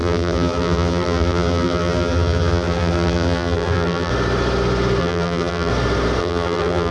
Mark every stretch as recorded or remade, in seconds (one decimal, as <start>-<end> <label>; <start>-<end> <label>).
0.0-4.1 remade; 4.1-5.0 recorded; 5.0-5.7 remade; 5.7-6.2 recorded; 6.2-6.9 remade